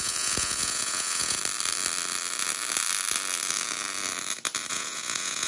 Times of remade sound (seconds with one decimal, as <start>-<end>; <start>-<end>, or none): 0.0-1.4; 4.7-5.5